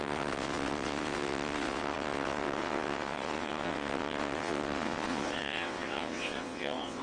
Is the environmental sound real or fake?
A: fake